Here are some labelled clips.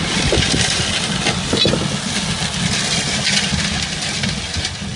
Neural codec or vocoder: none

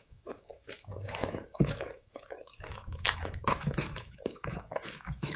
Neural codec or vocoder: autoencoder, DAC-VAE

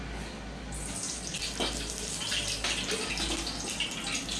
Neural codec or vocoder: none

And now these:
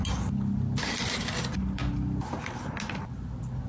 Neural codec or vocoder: none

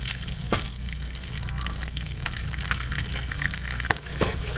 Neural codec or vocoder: codec, SNAC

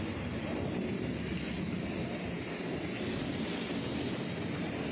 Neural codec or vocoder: none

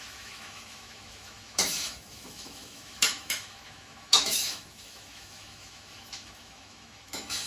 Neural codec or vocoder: autoencoder, DAC-VAE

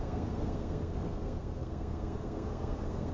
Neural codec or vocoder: codec, SNAC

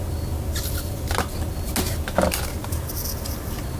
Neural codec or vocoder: none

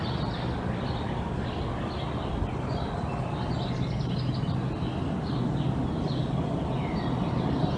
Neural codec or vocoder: none